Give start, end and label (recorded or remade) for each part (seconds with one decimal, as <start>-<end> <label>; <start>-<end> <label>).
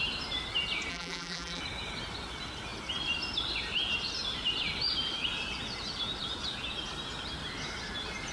0.0-0.9 recorded; 0.9-1.6 remade; 1.6-8.3 recorded